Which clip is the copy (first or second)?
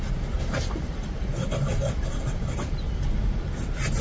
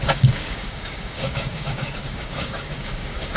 second